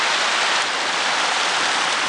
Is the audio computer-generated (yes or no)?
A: no